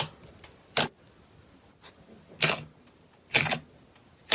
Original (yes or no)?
yes